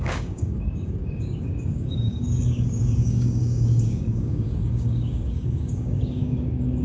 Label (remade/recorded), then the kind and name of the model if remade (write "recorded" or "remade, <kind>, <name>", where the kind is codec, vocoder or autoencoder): remade, codec, DAC